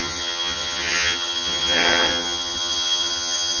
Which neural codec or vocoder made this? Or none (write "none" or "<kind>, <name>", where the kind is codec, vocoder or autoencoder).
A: vocoder, HiFi-GAN